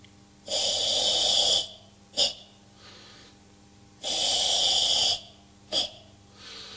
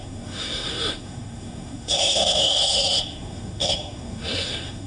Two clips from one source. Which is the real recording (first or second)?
first